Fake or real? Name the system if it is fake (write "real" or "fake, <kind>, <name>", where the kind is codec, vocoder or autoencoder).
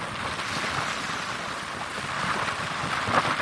real